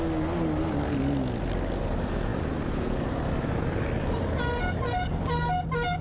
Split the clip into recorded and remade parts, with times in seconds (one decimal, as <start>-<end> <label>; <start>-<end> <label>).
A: 0.0-6.0 recorded